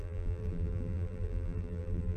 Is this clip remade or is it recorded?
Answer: remade